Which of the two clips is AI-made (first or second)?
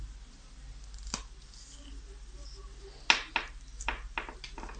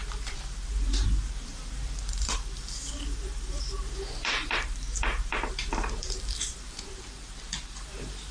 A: second